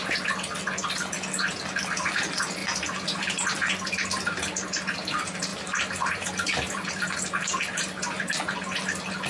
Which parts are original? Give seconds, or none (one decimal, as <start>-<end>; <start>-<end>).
0.0-2.6; 3.7-5.5; 6.9-9.3